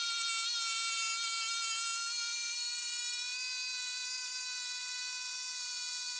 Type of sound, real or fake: real